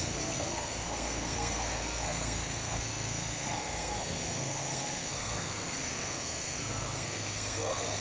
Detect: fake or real fake